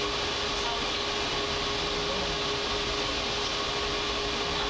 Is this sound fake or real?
real